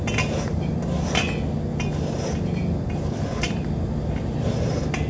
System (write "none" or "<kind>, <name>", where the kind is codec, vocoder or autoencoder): none